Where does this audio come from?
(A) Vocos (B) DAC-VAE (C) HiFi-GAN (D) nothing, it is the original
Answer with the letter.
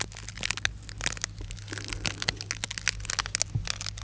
D